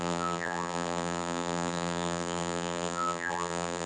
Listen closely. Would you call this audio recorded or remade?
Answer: remade